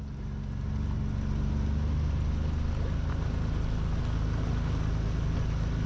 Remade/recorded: recorded